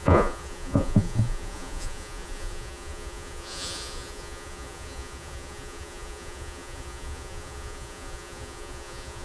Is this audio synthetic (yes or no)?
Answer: yes